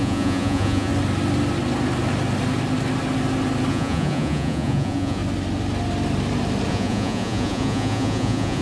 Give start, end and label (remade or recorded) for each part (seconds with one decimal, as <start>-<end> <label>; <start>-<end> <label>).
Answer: 0.0-0.9 remade; 0.9-3.7 recorded; 3.7-5.2 remade; 5.2-6.7 recorded; 6.7-8.6 remade